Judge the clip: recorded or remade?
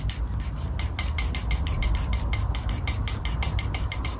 recorded